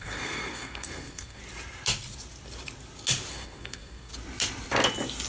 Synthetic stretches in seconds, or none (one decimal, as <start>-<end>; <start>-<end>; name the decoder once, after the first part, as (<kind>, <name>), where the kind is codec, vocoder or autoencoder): 0.0-1.4 (codec, SNAC); 3.3-4.1